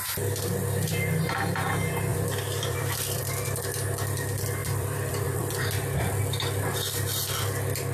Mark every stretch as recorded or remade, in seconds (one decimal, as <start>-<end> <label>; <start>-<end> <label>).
0.0-2.1 recorded; 2.1-3.2 remade; 3.2-4.6 recorded; 4.6-6.2 remade; 6.2-7.9 recorded